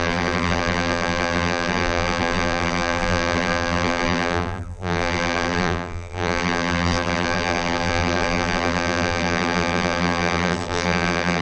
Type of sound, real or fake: fake